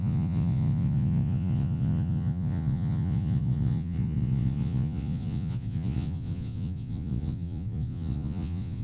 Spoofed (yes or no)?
yes